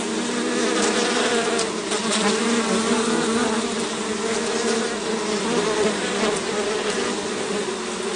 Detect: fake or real real